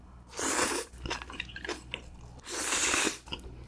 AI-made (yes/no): yes